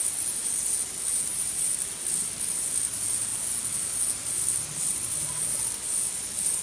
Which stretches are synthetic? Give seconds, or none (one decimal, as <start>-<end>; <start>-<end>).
1.1-1.7